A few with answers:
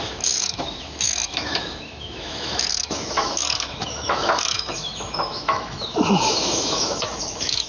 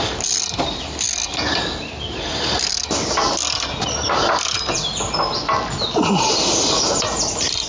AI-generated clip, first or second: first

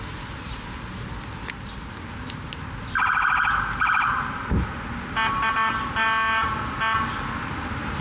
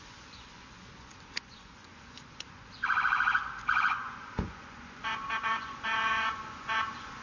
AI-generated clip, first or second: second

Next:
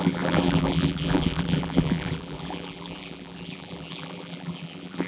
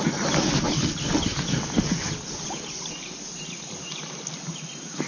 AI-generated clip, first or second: first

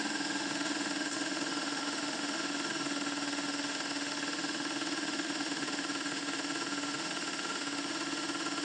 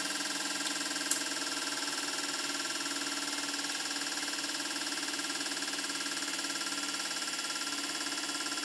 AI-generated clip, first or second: first